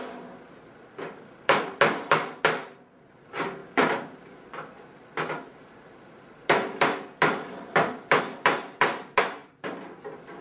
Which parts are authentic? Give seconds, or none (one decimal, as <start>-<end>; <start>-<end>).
0.0-9.4; 10.0-10.4